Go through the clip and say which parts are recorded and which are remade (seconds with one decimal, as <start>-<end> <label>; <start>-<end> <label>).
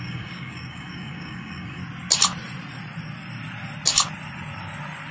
0.0-1.8 remade; 1.8-5.1 recorded